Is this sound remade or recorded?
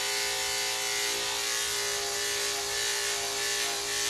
recorded